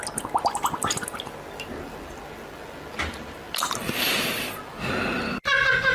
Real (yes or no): yes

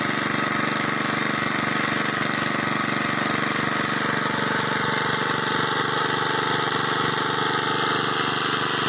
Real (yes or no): yes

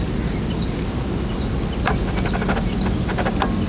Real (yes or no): yes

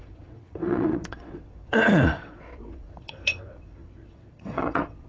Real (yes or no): no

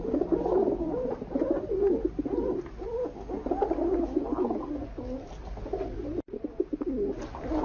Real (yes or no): yes